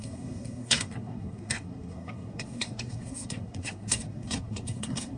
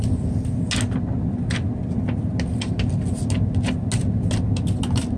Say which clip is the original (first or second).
second